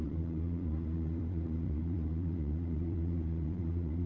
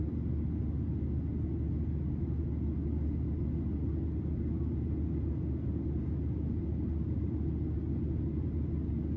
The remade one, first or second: first